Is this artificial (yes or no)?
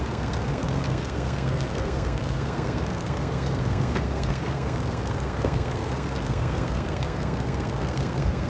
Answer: yes